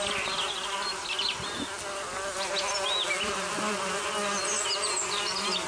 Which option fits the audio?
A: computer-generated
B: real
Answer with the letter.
B